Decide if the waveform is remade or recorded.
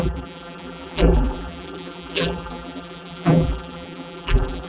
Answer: remade